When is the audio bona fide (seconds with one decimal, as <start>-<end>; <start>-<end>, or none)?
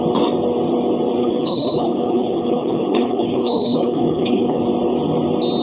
0.0-1.2; 4.6-5.6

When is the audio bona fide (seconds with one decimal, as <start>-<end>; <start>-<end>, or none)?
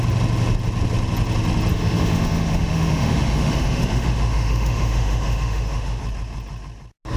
0.0-1.7; 6.0-7.2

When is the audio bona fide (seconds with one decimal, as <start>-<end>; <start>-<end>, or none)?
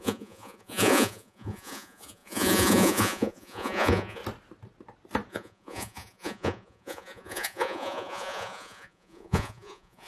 4.2-5.3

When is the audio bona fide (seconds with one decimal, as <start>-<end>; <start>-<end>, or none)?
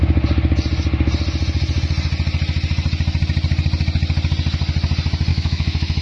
0.0-5.3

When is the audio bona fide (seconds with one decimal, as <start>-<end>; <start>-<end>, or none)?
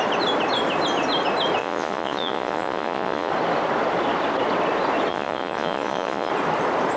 0.0-1.6; 3.3-5.1; 6.3-7.0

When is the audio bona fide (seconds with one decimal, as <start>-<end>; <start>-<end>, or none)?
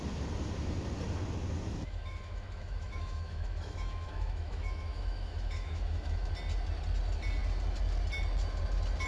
0.0-1.7; 6.3-9.1